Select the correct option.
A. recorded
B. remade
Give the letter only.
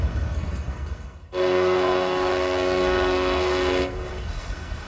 B